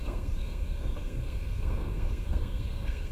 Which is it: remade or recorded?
remade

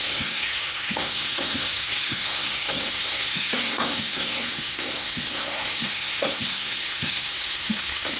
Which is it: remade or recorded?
remade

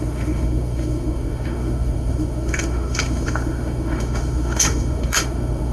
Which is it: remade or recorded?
remade